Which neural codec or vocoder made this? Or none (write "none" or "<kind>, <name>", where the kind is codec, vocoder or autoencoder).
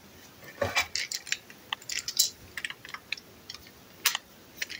none